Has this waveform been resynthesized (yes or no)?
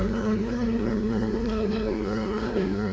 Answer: yes